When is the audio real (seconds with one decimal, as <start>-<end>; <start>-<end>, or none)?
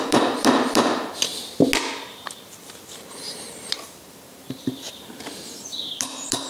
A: 1.3-2.9